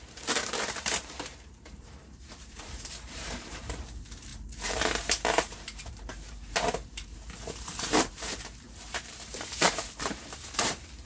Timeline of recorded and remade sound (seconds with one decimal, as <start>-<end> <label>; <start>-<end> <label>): 0.0-11.1 remade